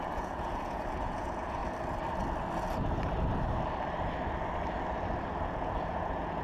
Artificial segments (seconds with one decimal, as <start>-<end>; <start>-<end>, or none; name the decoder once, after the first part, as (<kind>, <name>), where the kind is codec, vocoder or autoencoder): 0.0-1.6 (vocoder, Vocos); 5.4-6.4